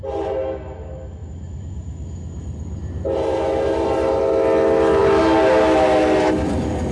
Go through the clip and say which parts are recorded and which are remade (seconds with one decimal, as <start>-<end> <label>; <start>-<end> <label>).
0.0-1.2 recorded; 1.2-4.2 remade; 4.2-6.9 recorded